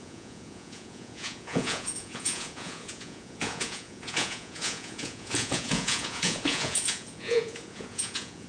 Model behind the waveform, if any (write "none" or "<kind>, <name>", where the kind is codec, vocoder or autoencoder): vocoder, Vocos